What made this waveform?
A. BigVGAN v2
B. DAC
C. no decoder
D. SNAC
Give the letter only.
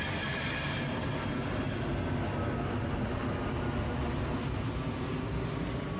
C